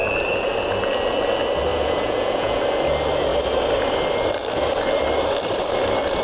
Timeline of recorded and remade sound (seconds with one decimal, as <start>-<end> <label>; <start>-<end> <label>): 0.0-1.7 recorded; 1.7-2.6 remade; 2.6-6.2 recorded